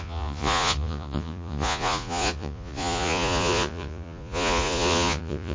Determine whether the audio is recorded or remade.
remade